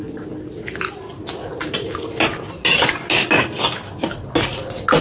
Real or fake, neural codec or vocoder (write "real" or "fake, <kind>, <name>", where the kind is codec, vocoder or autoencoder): real